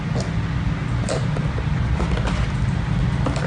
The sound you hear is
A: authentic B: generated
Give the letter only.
A